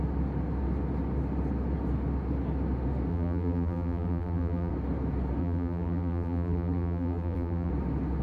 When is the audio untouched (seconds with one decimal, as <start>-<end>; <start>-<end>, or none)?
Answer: 0.0-3.1; 4.7-5.4; 7.7-8.2